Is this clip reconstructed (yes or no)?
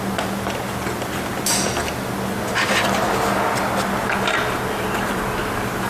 no